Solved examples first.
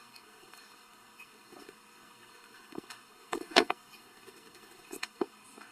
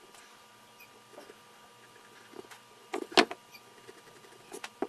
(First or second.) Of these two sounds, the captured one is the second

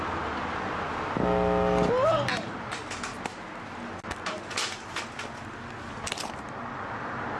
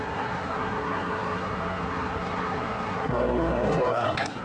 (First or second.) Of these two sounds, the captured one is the first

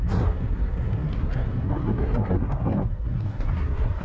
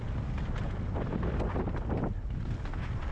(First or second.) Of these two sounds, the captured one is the second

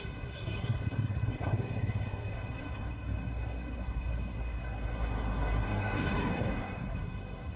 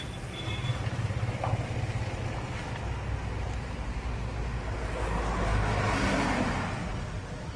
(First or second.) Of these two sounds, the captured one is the second